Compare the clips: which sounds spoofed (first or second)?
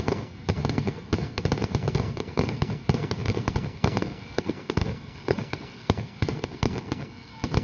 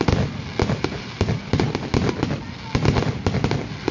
first